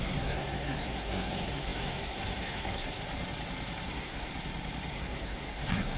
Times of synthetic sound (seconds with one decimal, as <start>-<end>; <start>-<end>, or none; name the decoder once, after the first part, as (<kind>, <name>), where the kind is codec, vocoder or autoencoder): 0.0-3.0 (codec, SNAC); 3.9-4.3; 4.9-6.0

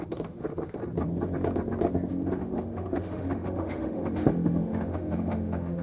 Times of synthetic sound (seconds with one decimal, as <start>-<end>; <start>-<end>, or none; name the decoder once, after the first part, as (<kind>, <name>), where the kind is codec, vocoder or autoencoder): 0.0-0.8 (autoencoder, DAC-VAE); 2.1-5.8

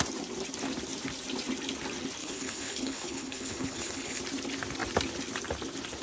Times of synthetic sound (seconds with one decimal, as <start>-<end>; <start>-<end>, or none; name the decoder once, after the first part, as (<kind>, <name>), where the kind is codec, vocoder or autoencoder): 2.2-4.2 (codec, HILCodec)

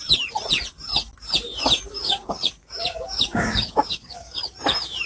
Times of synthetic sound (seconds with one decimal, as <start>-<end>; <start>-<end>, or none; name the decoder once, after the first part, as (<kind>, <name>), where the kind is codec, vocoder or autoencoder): 2.0-4.4 (codec, DAC)

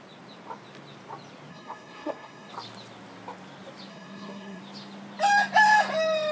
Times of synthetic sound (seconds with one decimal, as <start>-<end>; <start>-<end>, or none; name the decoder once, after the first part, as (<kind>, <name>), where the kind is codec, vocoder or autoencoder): 1.5-2.5 (codec, SNAC); 3.9-4.6

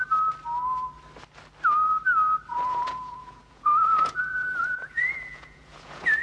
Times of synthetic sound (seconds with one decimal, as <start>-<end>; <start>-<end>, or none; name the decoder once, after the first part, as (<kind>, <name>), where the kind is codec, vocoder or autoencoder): 2.5-6.2 (vocoder, Vocos)